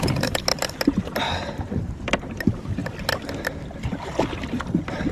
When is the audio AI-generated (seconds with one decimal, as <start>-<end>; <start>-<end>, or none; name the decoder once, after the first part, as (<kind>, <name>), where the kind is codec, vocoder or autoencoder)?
0.0-2.8 (vocoder, BigVGAN v2); 3.9-5.1